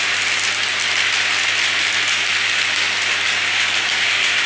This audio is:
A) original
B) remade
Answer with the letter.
A